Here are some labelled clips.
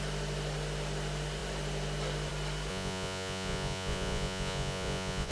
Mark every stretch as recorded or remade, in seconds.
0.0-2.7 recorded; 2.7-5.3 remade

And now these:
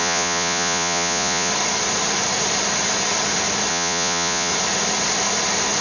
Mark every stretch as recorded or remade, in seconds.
0.0-1.5 remade; 1.5-3.7 recorded; 3.7-4.5 remade; 4.5-5.8 recorded

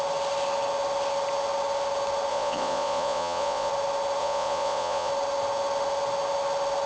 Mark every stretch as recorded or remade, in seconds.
0.0-2.3 recorded; 2.3-3.7 remade; 3.7-4.2 recorded; 4.2-5.1 remade; 5.1-6.9 recorded

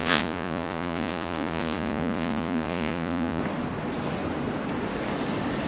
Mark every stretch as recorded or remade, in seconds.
0.0-3.4 remade; 3.4-5.7 recorded